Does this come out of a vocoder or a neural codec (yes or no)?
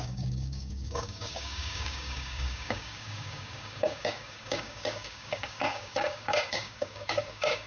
yes